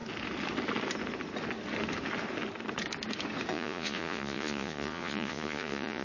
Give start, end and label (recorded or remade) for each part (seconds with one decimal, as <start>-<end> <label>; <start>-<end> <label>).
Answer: 0.0-3.5 recorded; 3.5-6.0 remade